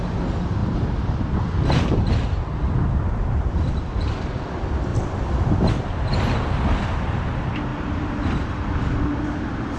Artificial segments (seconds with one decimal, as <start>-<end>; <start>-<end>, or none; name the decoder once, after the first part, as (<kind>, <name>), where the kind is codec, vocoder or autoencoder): 0.6-4.4 (vocoder, BigVGAN v2); 4.9-5.7; 7.7-8.7